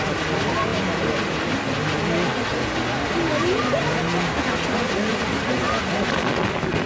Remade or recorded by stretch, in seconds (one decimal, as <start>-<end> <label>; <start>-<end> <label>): 0.0-6.9 recorded